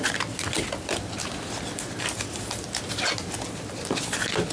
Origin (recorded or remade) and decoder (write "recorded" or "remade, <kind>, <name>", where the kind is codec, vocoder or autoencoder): recorded